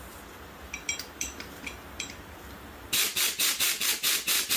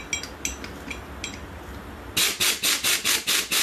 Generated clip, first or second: first